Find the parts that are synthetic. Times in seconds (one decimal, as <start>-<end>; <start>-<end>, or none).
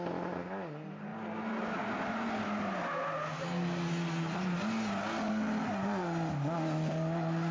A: none